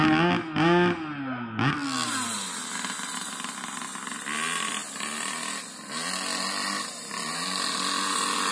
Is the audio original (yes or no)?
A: yes